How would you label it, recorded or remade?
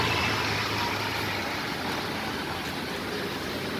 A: recorded